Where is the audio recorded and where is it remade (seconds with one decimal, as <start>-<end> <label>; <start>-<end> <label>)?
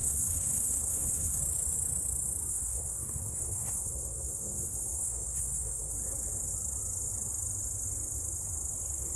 0.0-1.4 remade; 1.4-2.5 recorded; 2.5-5.9 remade; 5.9-9.2 recorded